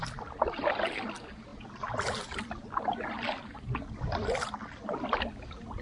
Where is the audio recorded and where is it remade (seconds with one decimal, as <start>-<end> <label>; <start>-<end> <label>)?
0.0-5.8 recorded